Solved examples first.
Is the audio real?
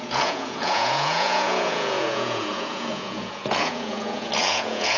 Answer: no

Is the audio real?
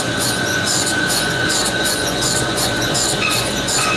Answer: no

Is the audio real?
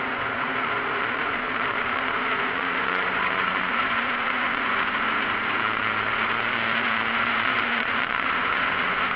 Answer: no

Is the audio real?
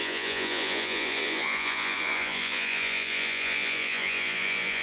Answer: no